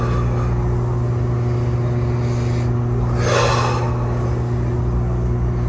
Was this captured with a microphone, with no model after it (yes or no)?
yes